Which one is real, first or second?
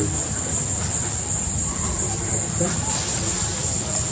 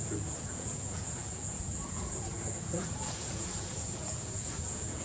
first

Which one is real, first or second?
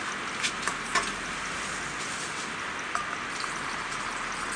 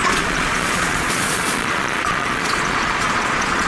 first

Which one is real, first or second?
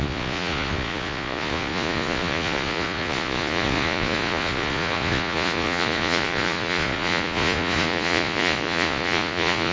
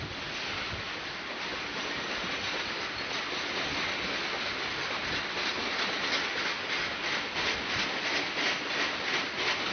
second